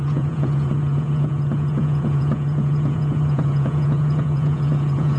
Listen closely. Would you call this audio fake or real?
fake